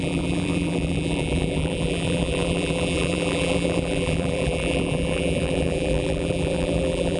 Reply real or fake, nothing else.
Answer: fake